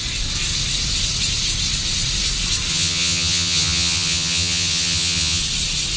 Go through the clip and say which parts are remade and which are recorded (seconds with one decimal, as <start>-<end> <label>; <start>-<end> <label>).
0.0-2.7 recorded; 2.7-5.4 remade; 5.4-6.0 recorded

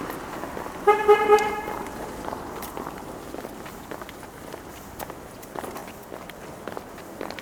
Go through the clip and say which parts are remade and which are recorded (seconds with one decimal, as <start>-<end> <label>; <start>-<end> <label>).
0.0-1.3 recorded; 1.3-5.0 remade; 5.0-7.4 recorded